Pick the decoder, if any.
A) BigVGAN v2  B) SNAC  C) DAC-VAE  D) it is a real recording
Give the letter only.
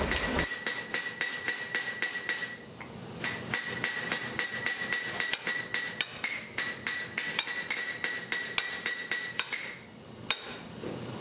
D